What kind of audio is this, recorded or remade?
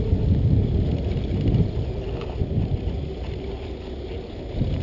recorded